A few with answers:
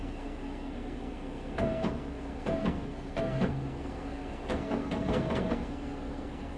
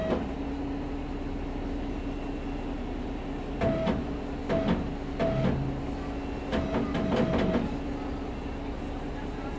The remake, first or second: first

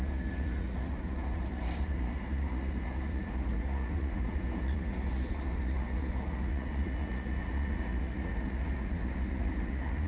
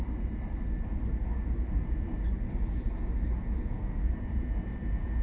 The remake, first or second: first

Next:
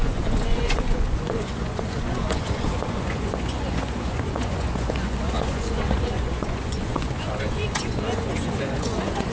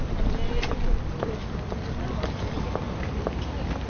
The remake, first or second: first